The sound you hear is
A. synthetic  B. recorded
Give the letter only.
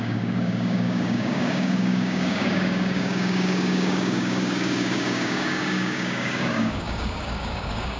A